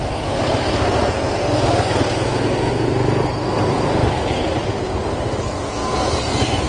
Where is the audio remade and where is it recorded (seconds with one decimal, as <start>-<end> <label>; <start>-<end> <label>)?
0.0-1.0 recorded; 1.0-1.5 remade; 1.5-3.5 recorded; 3.5-5.0 remade; 5.0-6.7 recorded